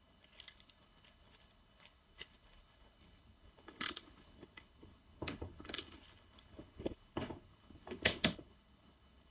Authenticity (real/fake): fake